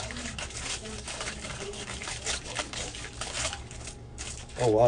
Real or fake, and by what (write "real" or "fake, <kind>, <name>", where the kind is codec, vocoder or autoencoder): fake, codec, DAC